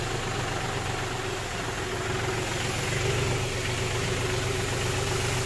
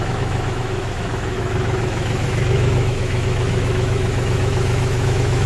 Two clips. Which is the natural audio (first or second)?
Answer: first